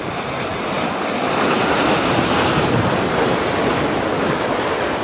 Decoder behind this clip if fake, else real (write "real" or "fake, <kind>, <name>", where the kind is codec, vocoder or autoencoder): real